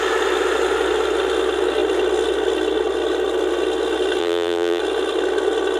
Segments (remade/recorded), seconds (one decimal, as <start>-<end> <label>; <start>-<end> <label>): 0.0-4.2 recorded; 4.2-4.8 remade; 4.8-5.8 recorded